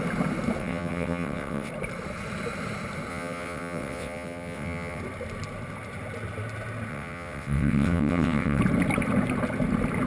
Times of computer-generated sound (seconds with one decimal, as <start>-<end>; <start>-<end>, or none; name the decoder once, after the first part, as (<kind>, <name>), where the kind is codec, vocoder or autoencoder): 0.6-1.7 (vocoder, WaveNeXt); 3.1-5.0; 6.9-8.6

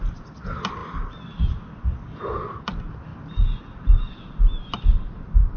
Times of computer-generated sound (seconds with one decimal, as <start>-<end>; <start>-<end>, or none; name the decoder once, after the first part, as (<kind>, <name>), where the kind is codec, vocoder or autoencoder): none